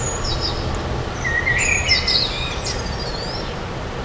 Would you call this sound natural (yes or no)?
yes